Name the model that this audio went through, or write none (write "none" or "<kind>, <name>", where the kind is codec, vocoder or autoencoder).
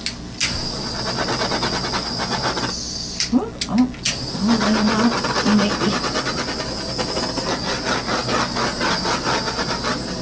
none